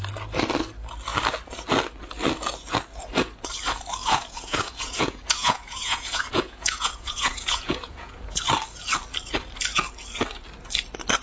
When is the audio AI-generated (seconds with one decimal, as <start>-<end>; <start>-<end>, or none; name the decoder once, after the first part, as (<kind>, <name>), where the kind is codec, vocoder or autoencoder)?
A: 4.0-8.4 (vocoder, Vocos)